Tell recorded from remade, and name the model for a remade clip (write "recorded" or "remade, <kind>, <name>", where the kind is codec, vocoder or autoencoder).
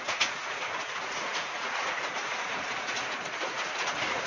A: remade, vocoder, Vocos